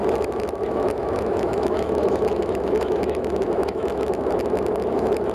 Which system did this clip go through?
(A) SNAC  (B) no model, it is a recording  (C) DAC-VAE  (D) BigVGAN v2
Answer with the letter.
C